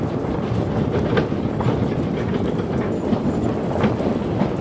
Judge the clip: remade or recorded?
recorded